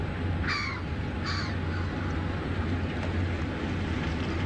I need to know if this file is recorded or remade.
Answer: recorded